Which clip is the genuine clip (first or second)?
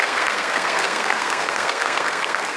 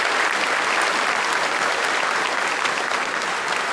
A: second